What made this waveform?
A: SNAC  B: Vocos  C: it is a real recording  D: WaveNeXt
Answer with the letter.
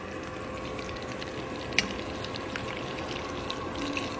C